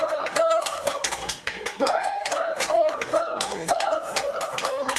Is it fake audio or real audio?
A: fake